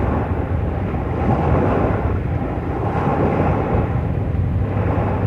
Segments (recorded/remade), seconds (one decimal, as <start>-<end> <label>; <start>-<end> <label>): 0.0-5.3 recorded